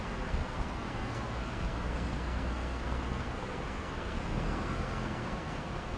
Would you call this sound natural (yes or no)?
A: no